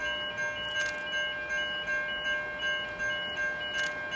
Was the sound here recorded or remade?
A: recorded